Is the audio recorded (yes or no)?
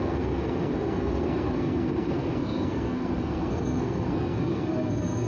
no